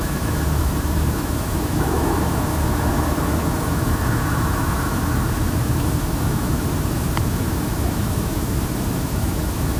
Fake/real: fake